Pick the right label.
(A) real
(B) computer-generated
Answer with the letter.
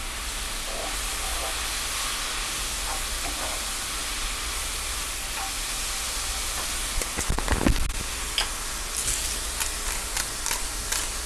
A